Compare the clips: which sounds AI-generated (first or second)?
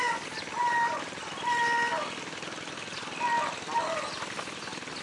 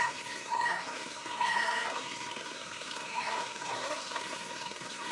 second